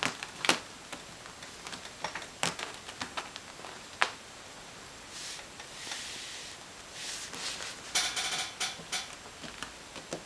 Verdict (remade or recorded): recorded